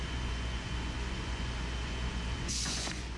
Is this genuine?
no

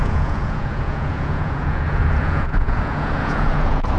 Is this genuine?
no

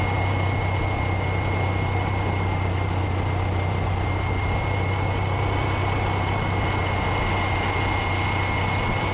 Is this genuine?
yes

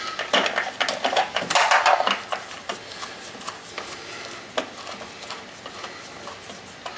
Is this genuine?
yes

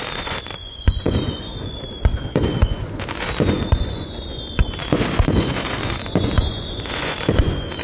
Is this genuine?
no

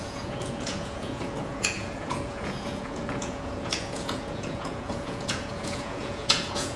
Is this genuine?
no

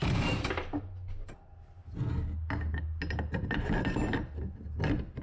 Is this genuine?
yes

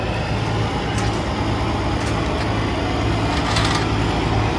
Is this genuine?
yes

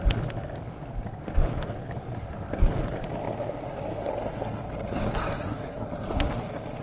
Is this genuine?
yes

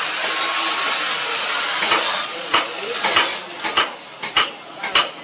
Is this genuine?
yes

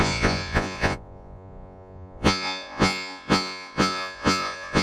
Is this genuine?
no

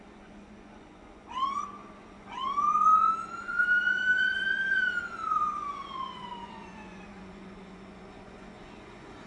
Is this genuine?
no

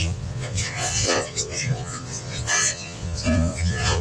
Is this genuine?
no